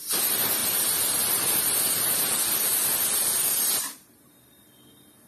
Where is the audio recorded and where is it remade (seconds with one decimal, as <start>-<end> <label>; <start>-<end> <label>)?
0.0-0.6 recorded; 0.6-1.9 remade; 1.9-5.3 recorded